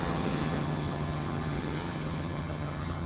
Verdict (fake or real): fake